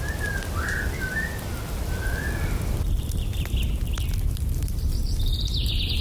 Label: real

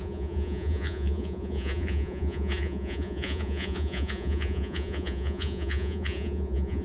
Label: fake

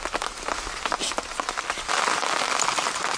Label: real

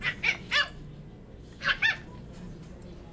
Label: real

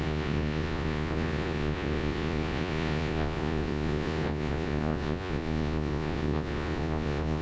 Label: fake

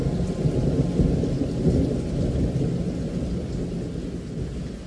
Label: real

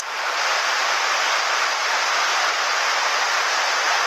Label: real